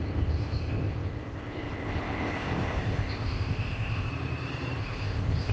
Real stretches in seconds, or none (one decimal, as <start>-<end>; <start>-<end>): 4.1-4.8